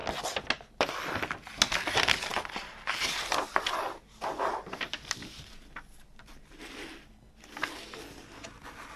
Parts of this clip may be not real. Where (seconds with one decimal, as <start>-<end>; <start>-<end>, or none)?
2.3-3.2; 6.1-7.1